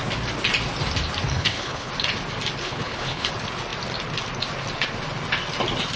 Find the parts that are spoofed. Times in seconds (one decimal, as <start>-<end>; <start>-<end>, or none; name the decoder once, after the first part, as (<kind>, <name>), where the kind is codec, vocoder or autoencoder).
1.3-1.9 (codec, HILCodec); 2.6-3.3